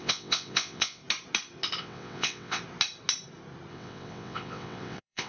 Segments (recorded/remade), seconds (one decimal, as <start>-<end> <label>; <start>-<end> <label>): 0.0-1.0 remade; 1.0-1.8 recorded; 1.8-2.6 remade; 2.6-3.7 recorded; 3.7-5.3 remade